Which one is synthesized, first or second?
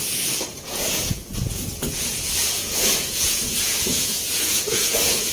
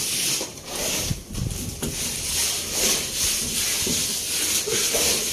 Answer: first